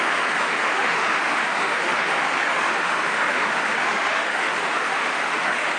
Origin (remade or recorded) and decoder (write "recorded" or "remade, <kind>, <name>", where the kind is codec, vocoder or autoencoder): remade, autoencoder, DAC-VAE